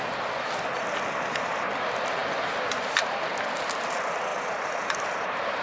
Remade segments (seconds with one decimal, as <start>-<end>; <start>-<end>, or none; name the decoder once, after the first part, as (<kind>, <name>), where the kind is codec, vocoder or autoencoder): 4.3-5.0 (vocoder, BigVGAN v2)